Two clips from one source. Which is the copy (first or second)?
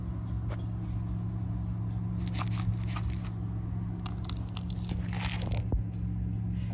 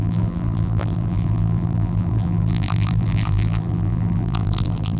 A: second